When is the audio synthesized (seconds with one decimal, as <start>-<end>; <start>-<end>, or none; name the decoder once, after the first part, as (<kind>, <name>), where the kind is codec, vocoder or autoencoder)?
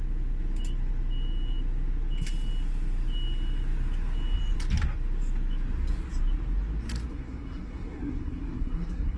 7.1-9.2 (codec, SNAC)